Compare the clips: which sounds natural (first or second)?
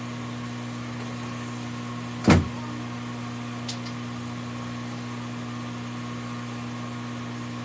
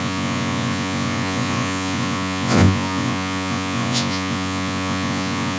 first